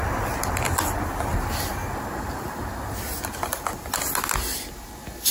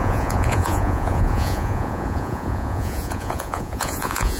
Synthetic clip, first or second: second